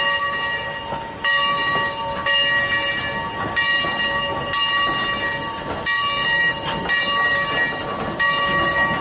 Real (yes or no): yes